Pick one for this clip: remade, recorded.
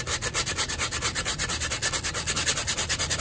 recorded